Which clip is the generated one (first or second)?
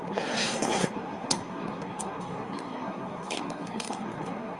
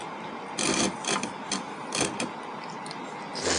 first